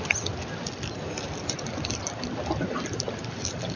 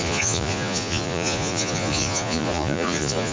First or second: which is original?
first